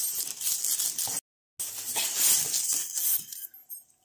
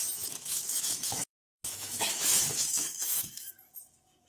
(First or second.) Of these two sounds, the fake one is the second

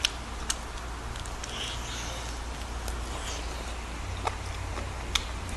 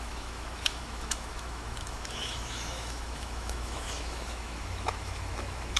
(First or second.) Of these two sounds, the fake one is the second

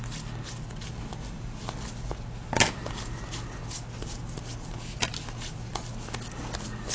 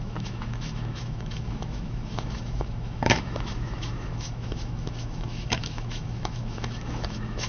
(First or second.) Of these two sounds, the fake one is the second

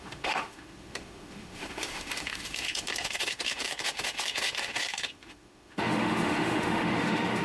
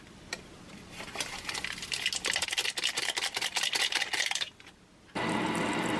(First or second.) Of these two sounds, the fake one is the first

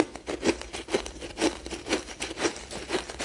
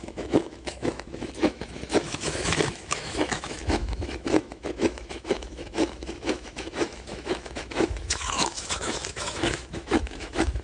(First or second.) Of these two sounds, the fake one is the second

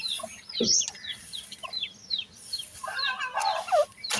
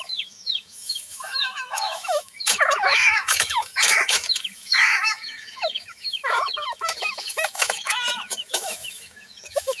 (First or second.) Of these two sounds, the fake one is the second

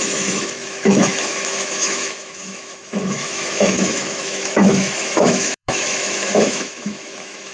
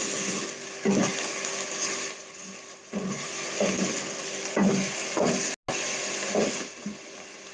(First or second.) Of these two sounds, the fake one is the first